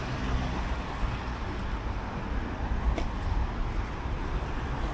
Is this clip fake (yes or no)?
no